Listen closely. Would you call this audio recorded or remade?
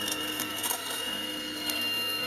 remade